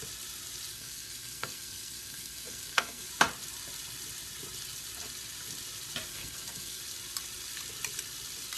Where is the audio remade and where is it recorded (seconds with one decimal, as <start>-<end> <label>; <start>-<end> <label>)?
0.0-0.7 recorded; 0.7-3.1 remade; 3.1-6.1 recorded; 6.1-6.8 remade; 6.8-8.6 recorded